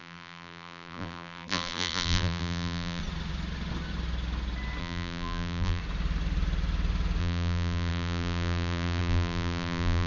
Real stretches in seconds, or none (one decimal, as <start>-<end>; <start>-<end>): 3.0-4.8; 5.8-7.2